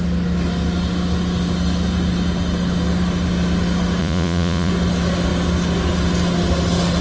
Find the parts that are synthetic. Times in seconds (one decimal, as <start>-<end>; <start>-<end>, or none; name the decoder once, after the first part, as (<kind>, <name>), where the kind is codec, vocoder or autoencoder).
4.0-4.7 (vocoder, Vocos)